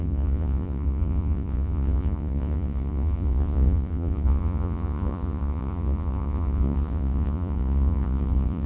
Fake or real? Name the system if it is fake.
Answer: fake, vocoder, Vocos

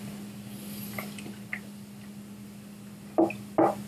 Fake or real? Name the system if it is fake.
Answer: real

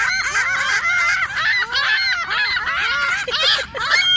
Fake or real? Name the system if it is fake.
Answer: real